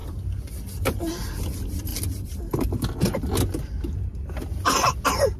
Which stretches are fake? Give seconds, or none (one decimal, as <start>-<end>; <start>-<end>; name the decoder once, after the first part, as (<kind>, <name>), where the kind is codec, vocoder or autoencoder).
1.9-2.7 (vocoder, BigVGAN v2)